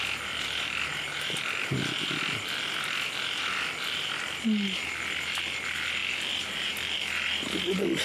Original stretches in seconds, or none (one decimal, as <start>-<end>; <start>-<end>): 0.0-8.0

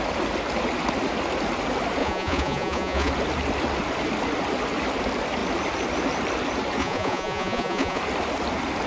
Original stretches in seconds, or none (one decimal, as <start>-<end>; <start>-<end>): 0.0-2.0; 3.1-6.8; 8.0-8.9